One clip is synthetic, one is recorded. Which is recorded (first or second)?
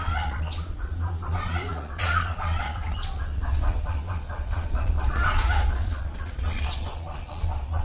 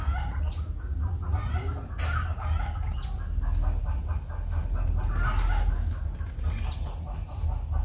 second